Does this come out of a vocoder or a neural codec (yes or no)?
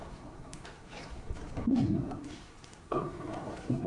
yes